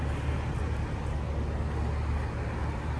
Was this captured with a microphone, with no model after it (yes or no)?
yes